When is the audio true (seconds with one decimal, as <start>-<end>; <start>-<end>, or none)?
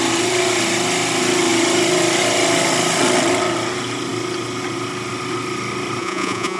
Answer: 0.0-6.0